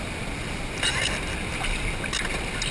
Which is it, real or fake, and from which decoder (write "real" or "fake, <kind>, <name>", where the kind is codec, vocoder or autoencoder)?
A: real